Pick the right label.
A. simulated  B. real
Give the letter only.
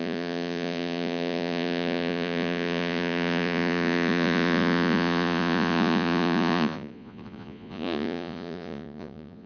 A